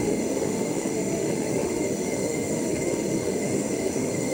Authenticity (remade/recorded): remade